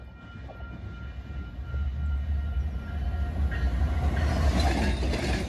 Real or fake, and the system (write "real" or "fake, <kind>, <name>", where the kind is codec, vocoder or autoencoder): real